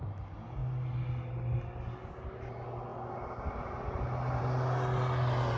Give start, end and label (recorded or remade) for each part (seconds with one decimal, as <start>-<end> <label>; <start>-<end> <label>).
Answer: 0.0-5.6 recorded